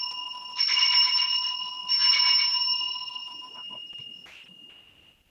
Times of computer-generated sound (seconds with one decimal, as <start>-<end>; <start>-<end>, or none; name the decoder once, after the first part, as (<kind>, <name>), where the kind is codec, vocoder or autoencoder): 2.0-2.8 (vocoder, BigVGAN v2); 3.2-4.0